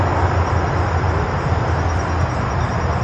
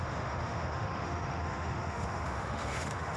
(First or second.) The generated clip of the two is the second